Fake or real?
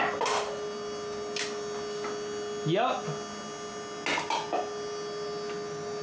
real